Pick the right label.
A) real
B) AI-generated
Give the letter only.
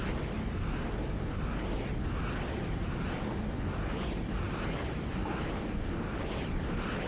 A